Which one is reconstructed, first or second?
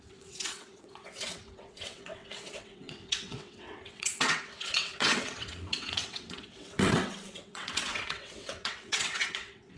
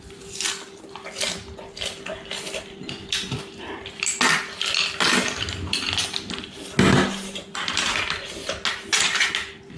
first